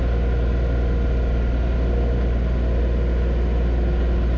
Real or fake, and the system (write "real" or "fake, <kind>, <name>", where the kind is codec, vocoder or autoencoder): real